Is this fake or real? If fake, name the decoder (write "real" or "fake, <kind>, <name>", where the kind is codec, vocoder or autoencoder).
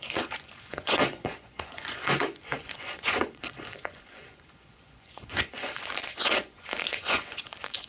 fake, vocoder, Vocos